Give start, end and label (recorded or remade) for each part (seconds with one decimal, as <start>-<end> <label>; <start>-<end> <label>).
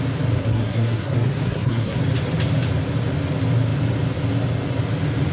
0.0-0.4 recorded; 0.4-2.0 remade; 2.0-5.3 recorded